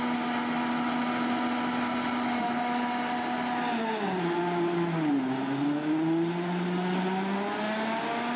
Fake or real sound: real